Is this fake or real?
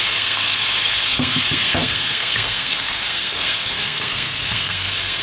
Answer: fake